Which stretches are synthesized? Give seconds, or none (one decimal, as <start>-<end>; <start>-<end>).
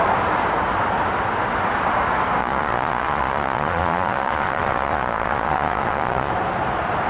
2.4-6.3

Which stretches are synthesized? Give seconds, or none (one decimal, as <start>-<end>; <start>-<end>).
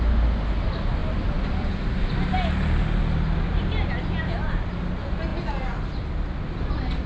none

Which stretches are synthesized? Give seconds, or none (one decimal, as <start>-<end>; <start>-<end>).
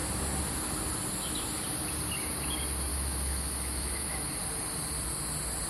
2.9-4.3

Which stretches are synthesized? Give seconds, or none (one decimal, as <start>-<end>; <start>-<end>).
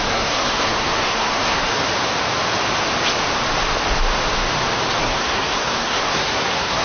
0.0-1.6; 5.0-6.8